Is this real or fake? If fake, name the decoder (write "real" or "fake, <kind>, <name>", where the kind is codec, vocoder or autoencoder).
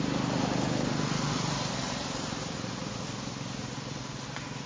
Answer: real